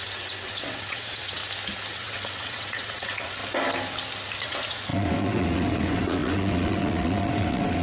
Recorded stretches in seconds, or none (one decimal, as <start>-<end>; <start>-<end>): 1.4-1.9; 3.4-4.4